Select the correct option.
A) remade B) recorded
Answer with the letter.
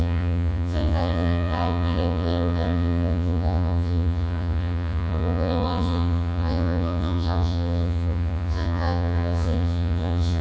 A